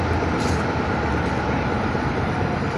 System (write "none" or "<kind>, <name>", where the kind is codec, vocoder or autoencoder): none